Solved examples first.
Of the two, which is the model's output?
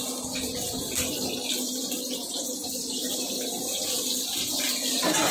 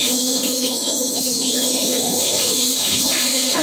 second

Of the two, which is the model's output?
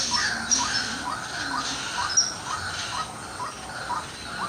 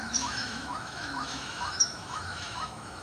second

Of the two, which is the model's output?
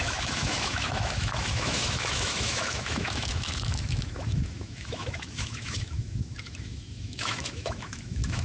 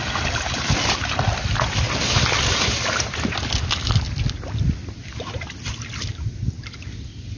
first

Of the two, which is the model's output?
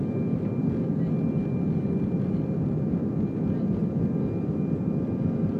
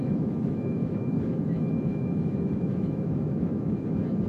second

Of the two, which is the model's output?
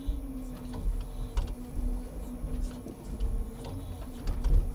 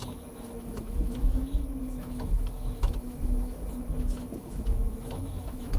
second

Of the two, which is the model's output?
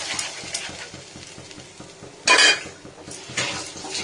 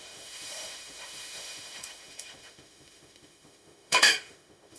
second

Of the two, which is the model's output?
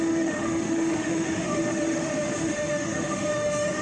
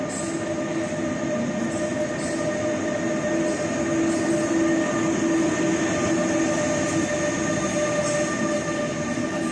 first